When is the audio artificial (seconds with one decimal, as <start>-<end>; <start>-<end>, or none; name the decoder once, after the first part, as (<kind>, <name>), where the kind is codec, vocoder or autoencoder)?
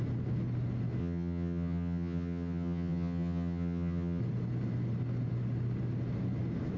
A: 1.0-4.2 (vocoder, HiFi-GAN)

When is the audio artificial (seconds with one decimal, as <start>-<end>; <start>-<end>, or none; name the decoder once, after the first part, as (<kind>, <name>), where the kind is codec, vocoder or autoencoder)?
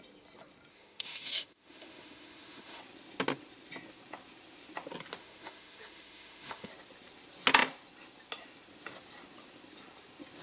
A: 0.7-2.8 (autoencoder, DAC-VAE); 5.2-6.7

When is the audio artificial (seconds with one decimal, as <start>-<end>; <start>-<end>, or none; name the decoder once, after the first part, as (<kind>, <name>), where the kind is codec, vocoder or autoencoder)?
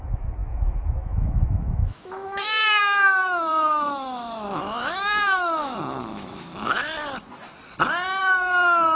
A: 0.0-6.8 (autoencoder, DAC-VAE); 8.2-9.0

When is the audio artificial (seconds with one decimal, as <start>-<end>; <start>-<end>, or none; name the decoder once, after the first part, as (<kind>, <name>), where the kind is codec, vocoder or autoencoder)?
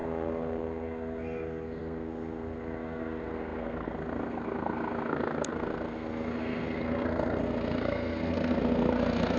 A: 0.0-9.4 (codec, SNAC)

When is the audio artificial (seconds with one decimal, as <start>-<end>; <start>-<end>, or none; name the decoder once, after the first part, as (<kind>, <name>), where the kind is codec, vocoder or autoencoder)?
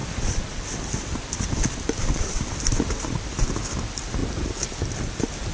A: 0.0-5.5 (vocoder, BigVGAN v2)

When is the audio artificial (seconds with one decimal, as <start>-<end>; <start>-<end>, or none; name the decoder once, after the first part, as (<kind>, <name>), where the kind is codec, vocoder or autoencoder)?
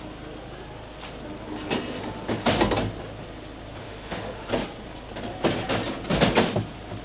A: 3.8-4.5 (autoencoder, DAC-VAE)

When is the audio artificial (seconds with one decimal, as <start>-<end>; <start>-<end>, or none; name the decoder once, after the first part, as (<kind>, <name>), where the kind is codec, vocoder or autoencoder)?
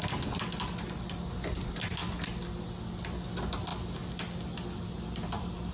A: none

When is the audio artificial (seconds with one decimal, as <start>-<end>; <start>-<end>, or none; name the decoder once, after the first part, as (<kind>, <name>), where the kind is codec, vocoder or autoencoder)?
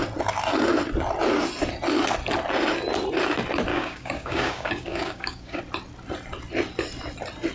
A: 3.7-5.6 (codec, DAC)